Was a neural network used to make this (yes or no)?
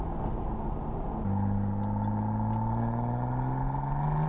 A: no